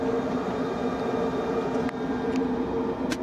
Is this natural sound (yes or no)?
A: yes